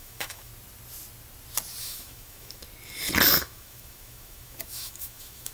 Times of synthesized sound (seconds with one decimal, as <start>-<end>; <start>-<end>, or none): 0.0-0.5; 1.8-2.6; 3.4-5.5